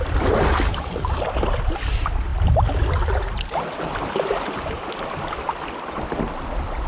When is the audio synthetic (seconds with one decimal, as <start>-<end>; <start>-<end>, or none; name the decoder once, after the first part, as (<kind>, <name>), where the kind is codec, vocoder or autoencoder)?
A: none